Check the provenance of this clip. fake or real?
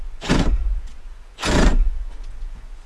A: fake